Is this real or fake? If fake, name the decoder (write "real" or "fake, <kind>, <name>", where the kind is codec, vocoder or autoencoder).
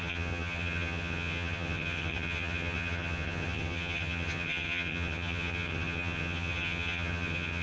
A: fake, vocoder, HiFi-GAN